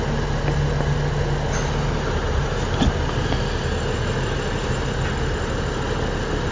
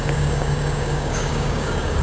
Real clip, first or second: first